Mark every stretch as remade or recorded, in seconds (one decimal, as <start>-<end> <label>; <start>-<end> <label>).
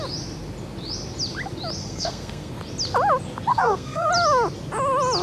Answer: 0.0-1.8 recorded; 1.8-2.5 remade; 2.5-3.5 recorded; 3.5-4.1 remade; 4.1-5.2 recorded